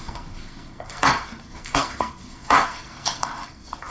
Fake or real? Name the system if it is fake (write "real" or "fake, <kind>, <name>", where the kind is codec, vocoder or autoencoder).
fake, codec, SNAC